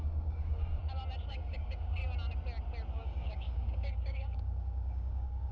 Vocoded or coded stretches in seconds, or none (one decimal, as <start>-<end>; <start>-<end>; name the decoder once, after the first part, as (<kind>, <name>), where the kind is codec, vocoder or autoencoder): 0.0-0.8 (codec, DAC); 1.3-2.0; 2.9-5.5